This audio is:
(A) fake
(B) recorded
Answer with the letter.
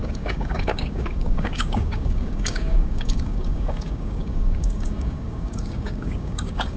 A